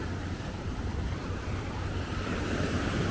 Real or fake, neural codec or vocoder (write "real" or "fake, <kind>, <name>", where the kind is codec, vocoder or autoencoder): fake, vocoder, BigVGAN v2